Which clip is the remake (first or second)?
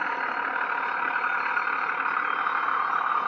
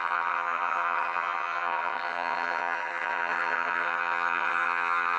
second